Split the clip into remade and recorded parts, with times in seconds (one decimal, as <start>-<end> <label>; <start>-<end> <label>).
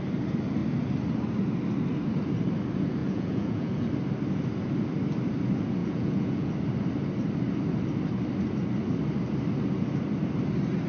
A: 0.0-3.0 recorded; 3.0-3.9 remade; 3.9-5.8 recorded; 5.8-6.5 remade; 6.5-10.9 recorded